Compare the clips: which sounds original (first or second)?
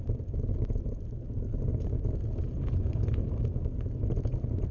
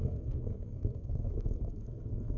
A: first